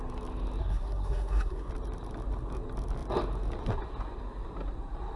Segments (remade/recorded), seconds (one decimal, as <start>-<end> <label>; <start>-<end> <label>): 0.0-0.6 recorded; 0.6-1.7 remade; 1.7-5.2 recorded